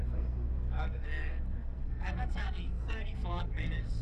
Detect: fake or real fake